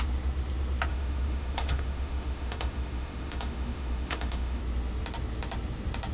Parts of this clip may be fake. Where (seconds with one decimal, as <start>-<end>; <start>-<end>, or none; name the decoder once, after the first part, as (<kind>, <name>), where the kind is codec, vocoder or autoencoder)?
0.9-4.6 (autoencoder, DAC-VAE)